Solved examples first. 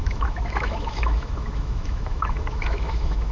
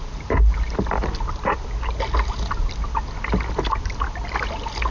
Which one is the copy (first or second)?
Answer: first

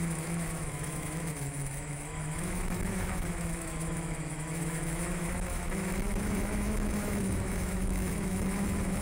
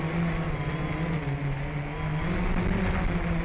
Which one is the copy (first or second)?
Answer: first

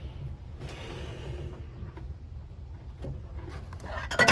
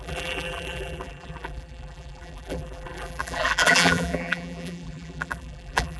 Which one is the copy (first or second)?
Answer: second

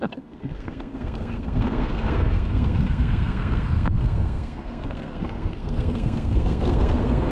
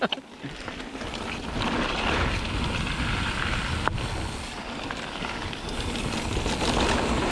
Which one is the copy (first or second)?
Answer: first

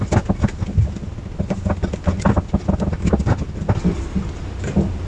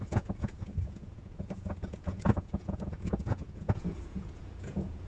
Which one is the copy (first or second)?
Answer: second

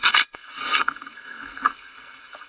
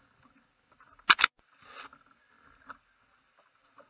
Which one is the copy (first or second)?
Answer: first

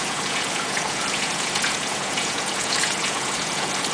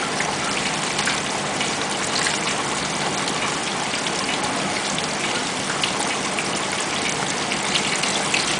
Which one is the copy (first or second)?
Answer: first